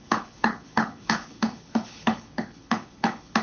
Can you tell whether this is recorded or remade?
remade